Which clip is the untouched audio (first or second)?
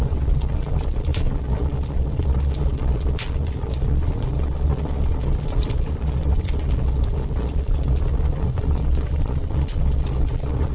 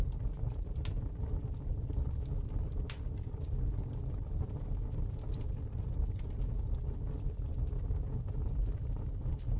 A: second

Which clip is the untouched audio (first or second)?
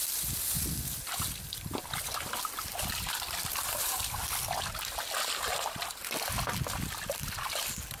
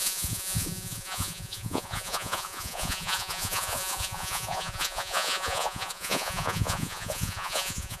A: first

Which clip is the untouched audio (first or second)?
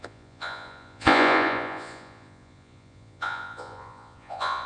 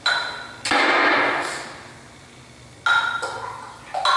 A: second